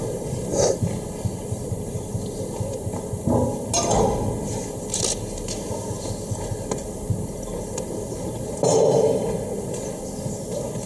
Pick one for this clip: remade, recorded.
recorded